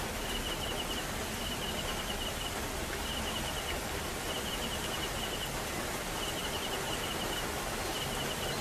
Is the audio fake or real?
real